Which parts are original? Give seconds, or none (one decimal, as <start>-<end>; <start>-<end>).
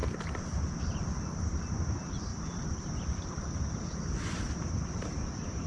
0.0-5.7